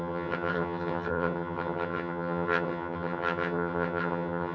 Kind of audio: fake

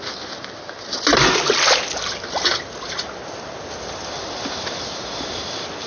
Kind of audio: real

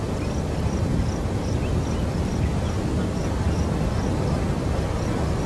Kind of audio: real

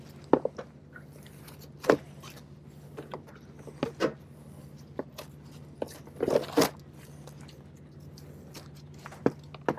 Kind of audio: real